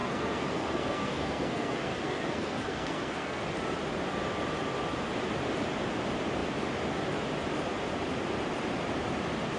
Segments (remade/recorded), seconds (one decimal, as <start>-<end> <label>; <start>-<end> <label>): 0.0-3.4 remade; 3.4-9.6 recorded